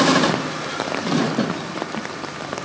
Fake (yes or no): no